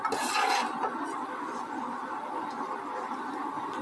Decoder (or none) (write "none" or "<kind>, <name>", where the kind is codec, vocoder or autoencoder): none